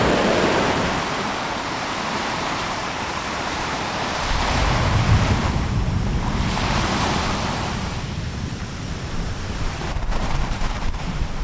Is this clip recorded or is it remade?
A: remade